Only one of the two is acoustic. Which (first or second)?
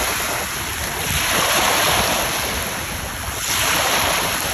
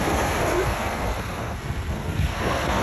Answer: first